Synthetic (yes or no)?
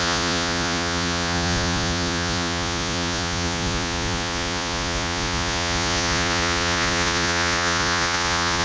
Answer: yes